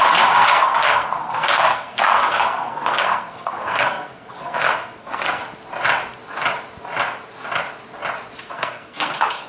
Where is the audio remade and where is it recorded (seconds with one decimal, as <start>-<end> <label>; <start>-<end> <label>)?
0.0-5.4 remade; 5.4-8.4 recorded; 8.4-9.5 remade